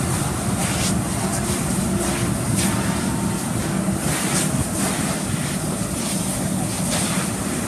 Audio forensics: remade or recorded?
recorded